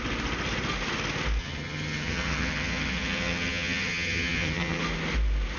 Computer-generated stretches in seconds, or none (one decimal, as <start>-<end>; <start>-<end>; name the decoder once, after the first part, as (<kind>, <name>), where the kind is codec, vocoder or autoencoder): 1.4-4.8 (vocoder, HiFi-GAN)